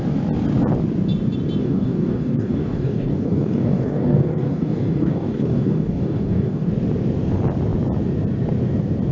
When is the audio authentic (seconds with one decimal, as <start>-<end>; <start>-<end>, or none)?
0.0-1.6; 6.7-9.1